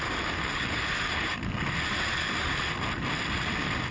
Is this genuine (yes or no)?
yes